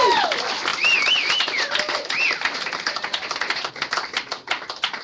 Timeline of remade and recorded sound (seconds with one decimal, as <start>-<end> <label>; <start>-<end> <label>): 0.0-5.0 recorded